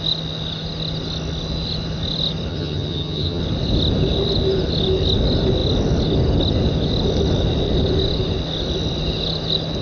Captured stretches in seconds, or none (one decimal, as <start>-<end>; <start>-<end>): 0.0-2.5; 3.4-9.8